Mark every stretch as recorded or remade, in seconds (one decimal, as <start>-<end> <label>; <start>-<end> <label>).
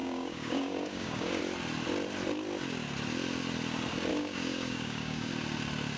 0.0-1.4 remade; 1.4-4.1 recorded; 4.1-5.3 remade; 5.3-6.0 recorded